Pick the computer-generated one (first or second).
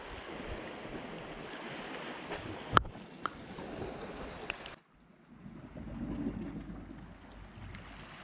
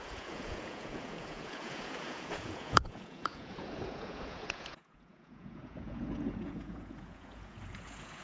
second